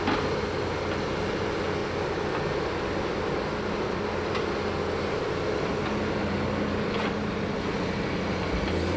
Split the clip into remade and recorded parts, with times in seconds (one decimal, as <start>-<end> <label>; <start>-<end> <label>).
0.0-9.0 recorded